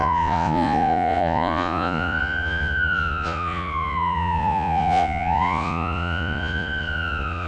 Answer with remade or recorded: remade